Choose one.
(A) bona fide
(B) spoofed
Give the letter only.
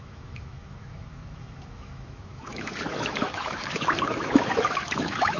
B